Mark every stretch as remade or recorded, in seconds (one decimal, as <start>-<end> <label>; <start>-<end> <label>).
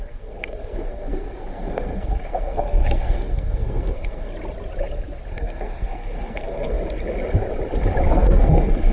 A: 0.0-4.3 remade; 4.3-5.3 recorded; 5.3-6.8 remade; 6.8-8.1 recorded; 8.1-8.9 remade